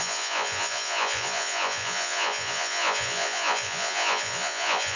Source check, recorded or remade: remade